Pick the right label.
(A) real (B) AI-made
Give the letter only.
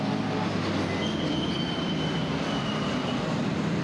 A